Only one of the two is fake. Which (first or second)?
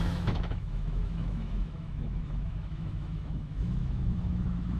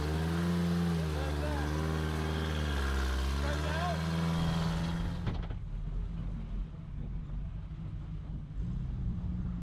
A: first